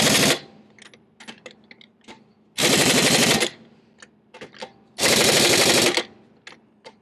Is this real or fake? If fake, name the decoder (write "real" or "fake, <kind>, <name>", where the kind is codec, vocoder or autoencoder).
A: real